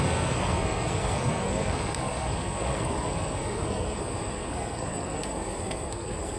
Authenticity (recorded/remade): remade